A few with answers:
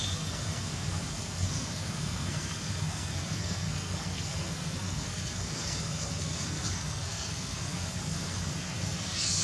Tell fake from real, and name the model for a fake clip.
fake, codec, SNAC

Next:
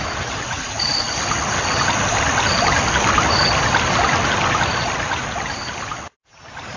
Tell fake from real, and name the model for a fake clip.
real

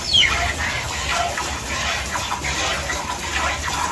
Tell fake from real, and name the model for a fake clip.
real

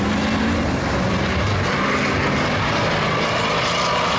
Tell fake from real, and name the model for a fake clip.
real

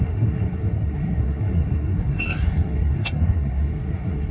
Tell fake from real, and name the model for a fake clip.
fake, codec, SNAC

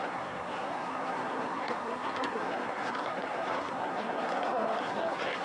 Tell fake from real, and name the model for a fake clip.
fake, codec, SNAC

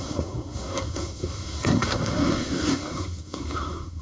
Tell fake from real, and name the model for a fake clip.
fake, codec, SNAC